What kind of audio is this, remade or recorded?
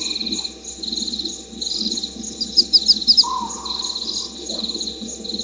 recorded